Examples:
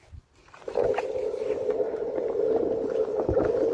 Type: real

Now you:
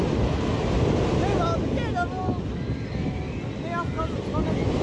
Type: real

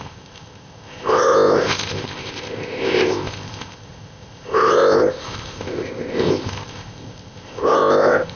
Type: fake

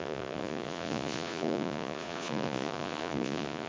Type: fake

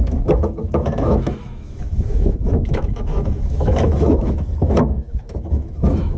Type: fake